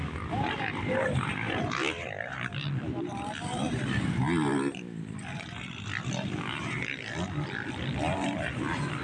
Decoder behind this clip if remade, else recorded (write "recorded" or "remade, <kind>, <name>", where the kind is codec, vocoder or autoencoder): recorded